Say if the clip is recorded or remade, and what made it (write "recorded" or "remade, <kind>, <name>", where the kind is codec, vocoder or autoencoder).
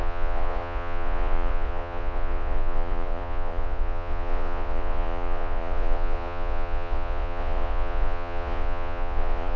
remade, vocoder, Vocos